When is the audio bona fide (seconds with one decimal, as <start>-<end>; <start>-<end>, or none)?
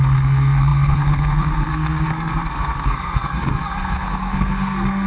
none